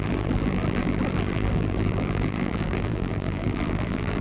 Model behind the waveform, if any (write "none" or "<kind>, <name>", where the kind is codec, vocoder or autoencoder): vocoder, BigVGAN v2